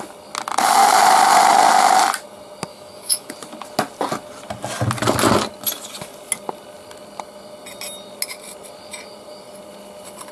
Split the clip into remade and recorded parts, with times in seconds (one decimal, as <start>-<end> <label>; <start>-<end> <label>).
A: 0.0-2.7 recorded; 2.7-3.3 remade; 3.3-10.3 recorded